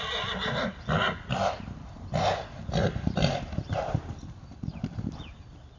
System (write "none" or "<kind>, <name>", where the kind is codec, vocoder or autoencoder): none